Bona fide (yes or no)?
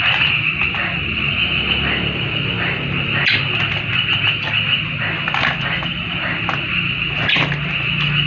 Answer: yes